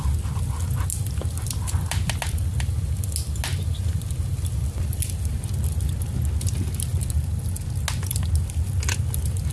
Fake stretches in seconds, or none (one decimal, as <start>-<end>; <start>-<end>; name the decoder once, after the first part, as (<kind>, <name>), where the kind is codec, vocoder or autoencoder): none